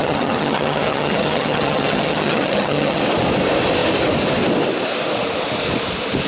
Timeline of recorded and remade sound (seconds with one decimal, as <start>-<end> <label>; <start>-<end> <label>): 0.0-3.0 remade; 3.0-6.3 recorded